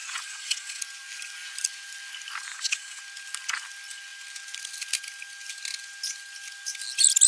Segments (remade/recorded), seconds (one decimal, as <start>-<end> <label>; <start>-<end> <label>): 0.0-0.8 remade; 0.8-2.5 recorded; 2.5-3.0 remade; 3.0-7.3 recorded